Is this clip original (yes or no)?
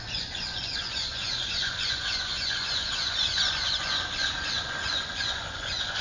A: no